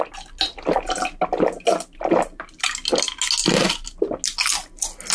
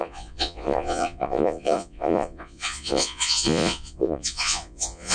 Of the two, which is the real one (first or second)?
first